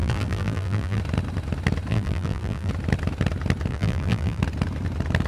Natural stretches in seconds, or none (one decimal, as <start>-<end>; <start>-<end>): 1.0-1.9; 2.7-3.7; 4.4-5.3